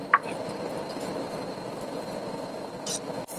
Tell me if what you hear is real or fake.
real